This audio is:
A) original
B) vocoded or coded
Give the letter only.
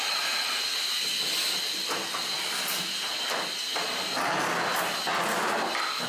A